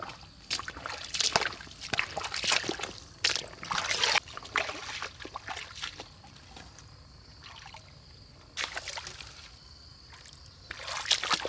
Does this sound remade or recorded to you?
recorded